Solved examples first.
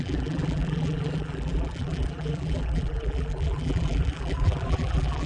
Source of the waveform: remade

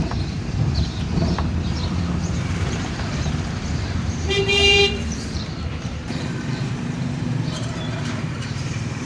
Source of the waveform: remade